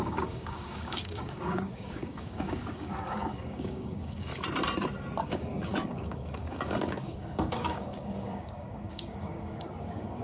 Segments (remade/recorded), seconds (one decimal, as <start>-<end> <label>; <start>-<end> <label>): 0.0-4.3 remade; 4.3-5.2 recorded; 5.2-10.2 remade